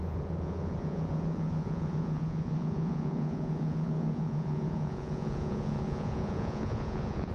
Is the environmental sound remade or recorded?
remade